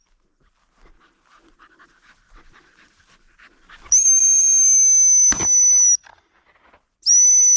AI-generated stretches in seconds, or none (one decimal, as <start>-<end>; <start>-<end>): none